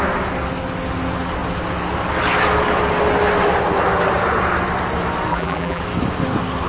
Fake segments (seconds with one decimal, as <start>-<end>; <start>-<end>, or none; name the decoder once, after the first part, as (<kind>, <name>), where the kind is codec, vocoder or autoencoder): 5.3-5.8 (vocoder, BigVGAN v2)